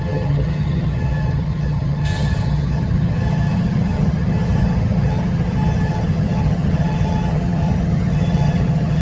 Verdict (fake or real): fake